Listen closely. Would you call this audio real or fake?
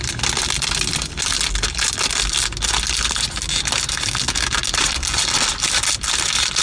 real